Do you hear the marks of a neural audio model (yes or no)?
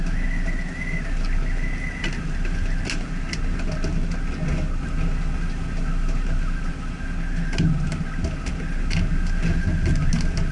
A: no